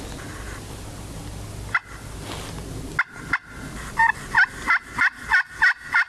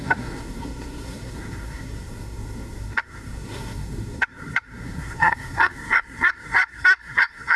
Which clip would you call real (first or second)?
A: first